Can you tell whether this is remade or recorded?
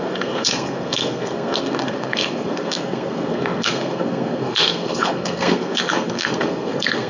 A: remade